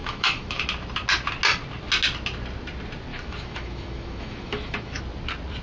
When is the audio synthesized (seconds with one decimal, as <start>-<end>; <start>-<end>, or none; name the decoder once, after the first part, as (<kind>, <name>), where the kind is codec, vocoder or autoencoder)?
0.0-0.6 (autoencoder, DAC-VAE); 3.1-5.0